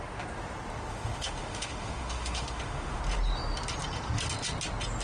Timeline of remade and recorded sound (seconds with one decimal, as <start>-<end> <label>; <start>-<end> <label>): 0.0-0.9 recorded; 0.9-3.0 remade; 3.0-5.0 recorded